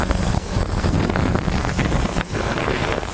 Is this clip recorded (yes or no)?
no